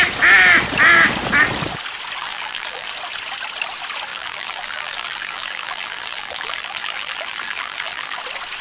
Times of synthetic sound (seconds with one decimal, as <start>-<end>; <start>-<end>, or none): 2.2-2.9; 4.1-8.2